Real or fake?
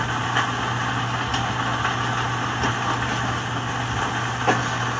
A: real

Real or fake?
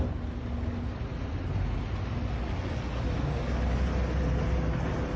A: real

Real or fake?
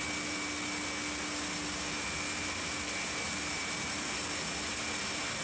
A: real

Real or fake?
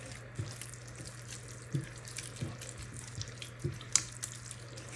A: real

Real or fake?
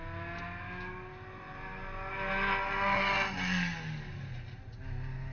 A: real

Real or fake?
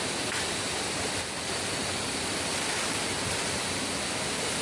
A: fake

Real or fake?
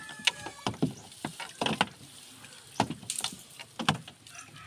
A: real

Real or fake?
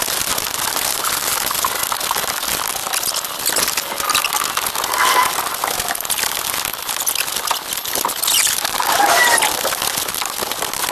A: real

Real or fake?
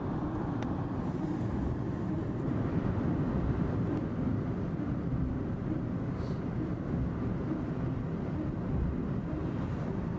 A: fake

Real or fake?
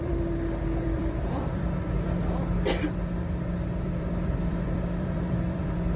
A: fake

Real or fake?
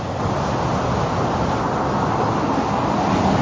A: real